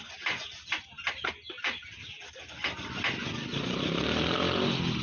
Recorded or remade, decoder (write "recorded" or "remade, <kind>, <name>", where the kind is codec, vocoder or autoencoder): recorded